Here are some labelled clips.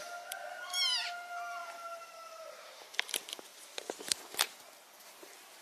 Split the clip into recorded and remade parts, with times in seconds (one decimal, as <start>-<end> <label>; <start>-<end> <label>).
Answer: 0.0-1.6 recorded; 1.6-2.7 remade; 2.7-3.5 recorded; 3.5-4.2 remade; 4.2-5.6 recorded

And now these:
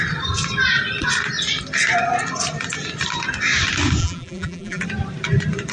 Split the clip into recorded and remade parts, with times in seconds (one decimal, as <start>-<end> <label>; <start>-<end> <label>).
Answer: 0.0-4.0 recorded; 4.0-4.8 remade; 4.8-5.7 recorded

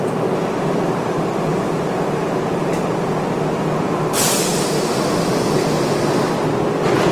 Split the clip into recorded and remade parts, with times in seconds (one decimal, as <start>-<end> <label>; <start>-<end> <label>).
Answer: 0.0-1.5 recorded; 1.5-2.3 remade; 2.3-7.1 recorded

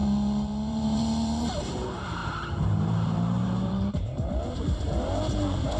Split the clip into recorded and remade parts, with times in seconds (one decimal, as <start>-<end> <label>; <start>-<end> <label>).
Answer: 0.0-5.8 remade